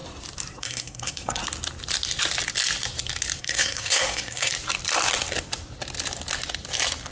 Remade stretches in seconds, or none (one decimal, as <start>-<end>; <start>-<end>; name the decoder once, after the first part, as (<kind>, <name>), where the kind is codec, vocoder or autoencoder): 0.6-1.4 (codec, SNAC); 3.4-4.5